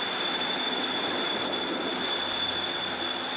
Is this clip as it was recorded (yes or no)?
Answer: yes